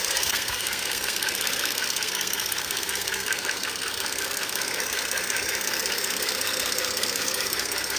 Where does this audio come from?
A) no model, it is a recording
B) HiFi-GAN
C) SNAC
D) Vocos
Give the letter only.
C